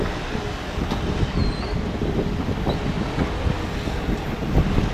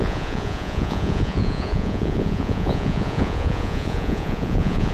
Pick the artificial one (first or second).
second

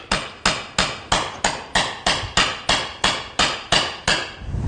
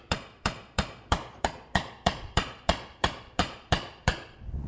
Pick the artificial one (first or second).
second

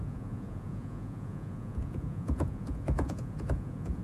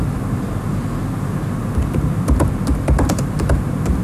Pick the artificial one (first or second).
first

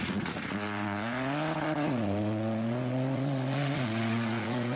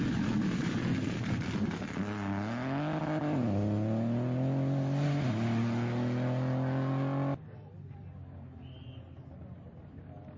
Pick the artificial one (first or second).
first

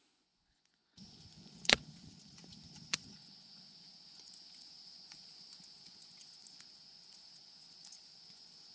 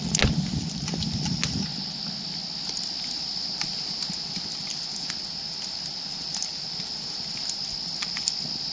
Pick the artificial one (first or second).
first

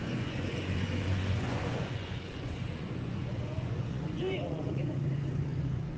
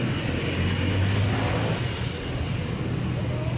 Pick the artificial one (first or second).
first